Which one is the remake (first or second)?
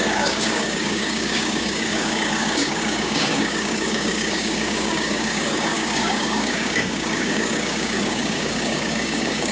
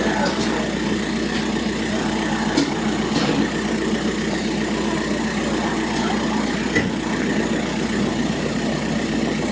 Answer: first